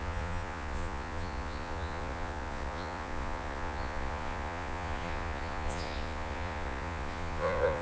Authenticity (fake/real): fake